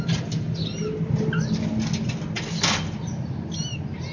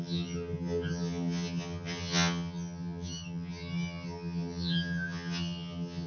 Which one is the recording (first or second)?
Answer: first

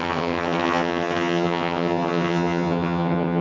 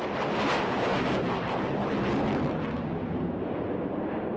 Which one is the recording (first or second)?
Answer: second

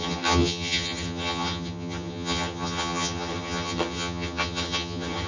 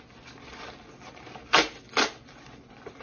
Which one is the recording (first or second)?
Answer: second